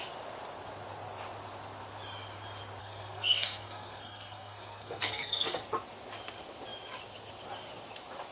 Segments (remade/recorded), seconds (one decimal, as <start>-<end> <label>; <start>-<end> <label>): 0.0-2.8 recorded; 2.8-5.6 remade; 5.6-8.3 recorded